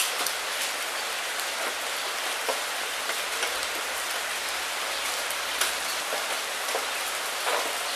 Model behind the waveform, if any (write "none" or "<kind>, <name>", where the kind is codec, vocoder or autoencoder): vocoder, BigVGAN v2